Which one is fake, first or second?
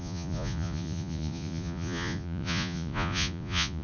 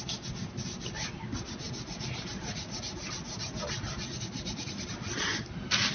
first